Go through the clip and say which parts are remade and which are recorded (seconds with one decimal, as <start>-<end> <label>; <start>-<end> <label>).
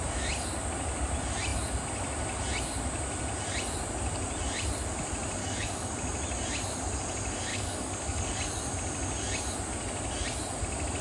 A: 0.0-5.4 recorded; 5.4-5.9 remade; 5.9-7.5 recorded; 7.5-8.4 remade; 8.4-11.0 recorded